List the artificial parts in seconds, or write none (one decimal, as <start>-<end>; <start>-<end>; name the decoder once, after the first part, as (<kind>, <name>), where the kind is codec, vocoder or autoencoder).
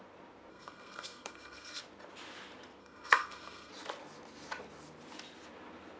0.5-1.8 (codec, SNAC); 2.8-3.7